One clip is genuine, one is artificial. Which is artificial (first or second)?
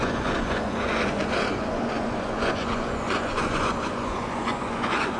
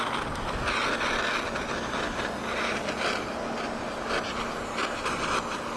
first